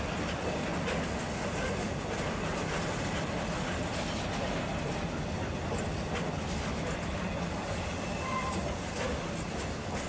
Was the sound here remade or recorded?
recorded